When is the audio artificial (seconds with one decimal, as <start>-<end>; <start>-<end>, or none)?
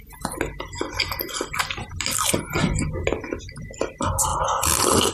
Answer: none